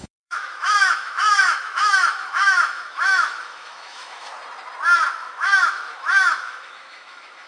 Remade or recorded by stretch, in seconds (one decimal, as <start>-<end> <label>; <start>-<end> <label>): 0.0-4.3 remade; 4.3-5.1 recorded; 5.1-7.5 remade